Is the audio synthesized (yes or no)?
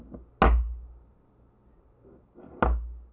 no